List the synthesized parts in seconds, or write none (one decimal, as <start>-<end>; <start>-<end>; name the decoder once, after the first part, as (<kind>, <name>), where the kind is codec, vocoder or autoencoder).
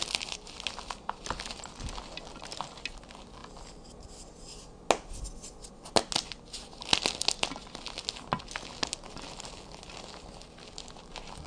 none